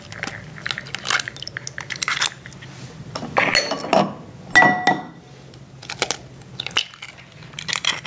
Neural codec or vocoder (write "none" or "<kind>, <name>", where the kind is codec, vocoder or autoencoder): none